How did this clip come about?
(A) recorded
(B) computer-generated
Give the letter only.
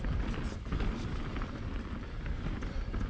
A